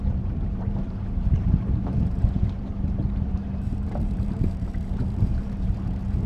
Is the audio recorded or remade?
remade